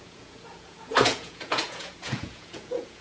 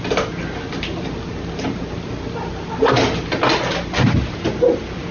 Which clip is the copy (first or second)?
first